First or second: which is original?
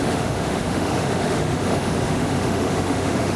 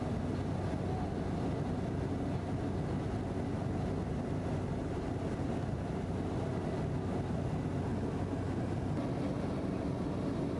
second